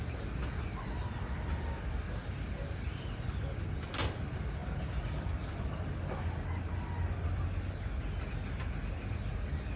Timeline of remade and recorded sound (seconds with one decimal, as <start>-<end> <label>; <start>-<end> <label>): 0.0-9.8 recorded